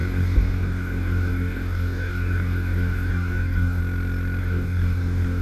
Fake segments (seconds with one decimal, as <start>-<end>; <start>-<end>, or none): 0.0-3.8; 4.4-5.4

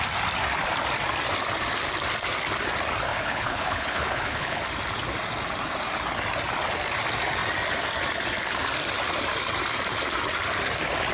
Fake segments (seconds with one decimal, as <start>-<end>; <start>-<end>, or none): 3.1-4.6

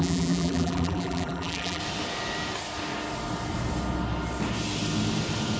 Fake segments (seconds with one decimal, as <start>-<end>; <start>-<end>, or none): 0.0-1.8